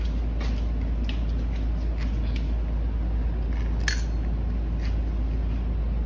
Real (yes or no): yes